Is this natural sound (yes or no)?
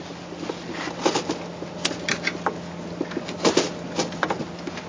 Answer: yes